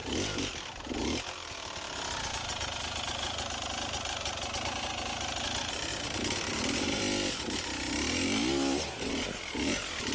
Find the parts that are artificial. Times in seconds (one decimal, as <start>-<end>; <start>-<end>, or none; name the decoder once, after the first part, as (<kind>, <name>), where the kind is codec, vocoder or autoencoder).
none